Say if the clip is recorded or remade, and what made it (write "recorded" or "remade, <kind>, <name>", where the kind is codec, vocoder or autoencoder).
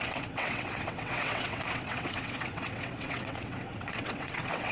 remade, vocoder, WaveNeXt